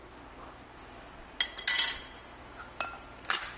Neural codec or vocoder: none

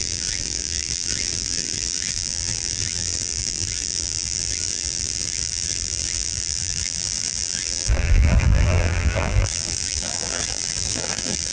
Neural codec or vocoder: vocoder, BigVGAN v2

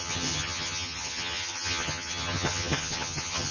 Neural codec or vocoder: vocoder, HiFi-GAN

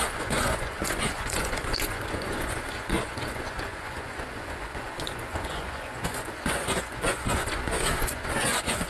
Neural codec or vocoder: vocoder, Vocos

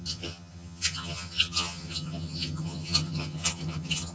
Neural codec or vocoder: vocoder, HiFi-GAN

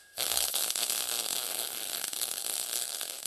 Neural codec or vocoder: codec, SNAC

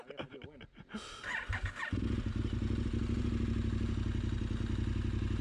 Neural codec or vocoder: none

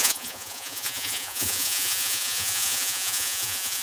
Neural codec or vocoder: vocoder, Vocos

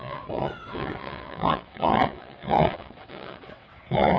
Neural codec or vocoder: vocoder, WaveNeXt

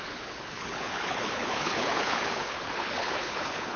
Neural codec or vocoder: codec, HILCodec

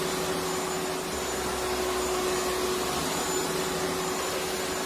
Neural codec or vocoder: none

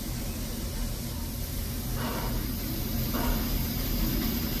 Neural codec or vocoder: none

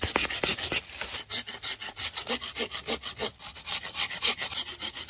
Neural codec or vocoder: none